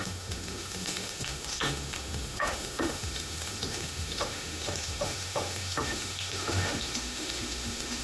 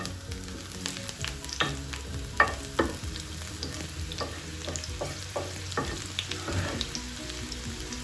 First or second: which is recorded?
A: second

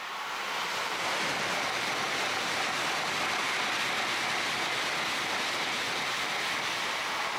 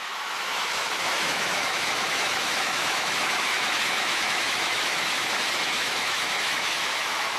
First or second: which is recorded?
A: first